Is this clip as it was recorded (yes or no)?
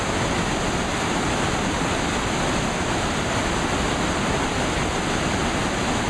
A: yes